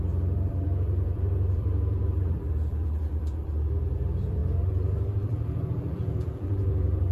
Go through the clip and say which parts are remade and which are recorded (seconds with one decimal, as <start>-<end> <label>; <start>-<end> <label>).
0.0-7.1 remade